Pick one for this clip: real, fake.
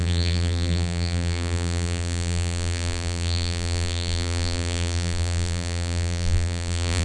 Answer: fake